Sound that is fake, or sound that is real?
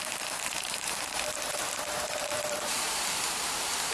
fake